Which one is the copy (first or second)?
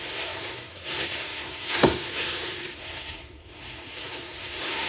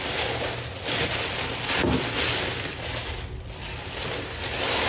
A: first